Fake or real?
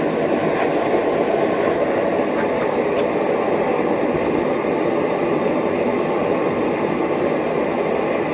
real